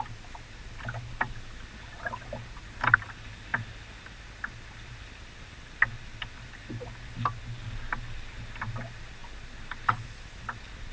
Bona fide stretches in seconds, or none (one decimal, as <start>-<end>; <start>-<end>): 0.0-10.9